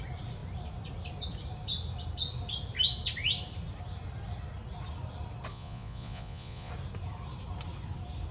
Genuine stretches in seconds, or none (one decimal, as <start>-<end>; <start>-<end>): 0.0-5.5; 6.7-8.3